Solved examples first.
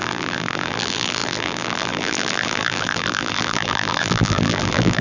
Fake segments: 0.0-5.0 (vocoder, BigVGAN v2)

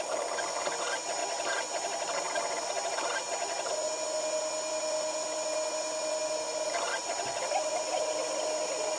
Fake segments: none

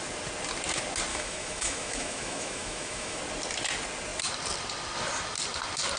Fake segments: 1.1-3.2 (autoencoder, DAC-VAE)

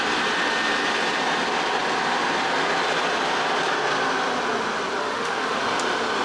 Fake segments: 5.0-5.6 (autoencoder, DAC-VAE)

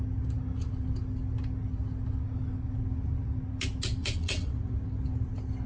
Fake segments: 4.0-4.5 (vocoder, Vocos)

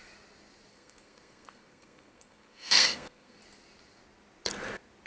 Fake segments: 0.7-3.4 (codec, SNAC)

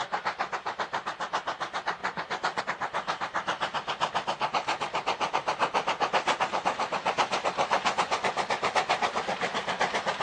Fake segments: 2.0-2.6 (vocoder, Vocos); 7.7-8.3

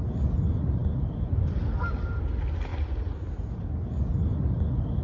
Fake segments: 0.8-1.6 (vocoder, BigVGAN v2)